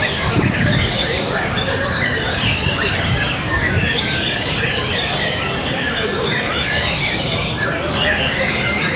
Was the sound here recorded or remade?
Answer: remade